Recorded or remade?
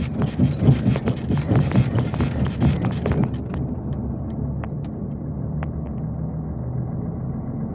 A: recorded